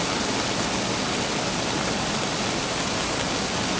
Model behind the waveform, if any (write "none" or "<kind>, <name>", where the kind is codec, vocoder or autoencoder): none